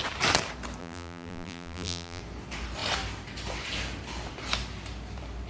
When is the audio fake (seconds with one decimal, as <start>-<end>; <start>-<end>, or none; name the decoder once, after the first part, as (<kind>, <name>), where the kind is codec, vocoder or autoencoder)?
0.8-2.2 (vocoder, BigVGAN v2)